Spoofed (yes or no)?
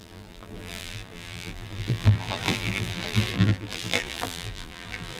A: yes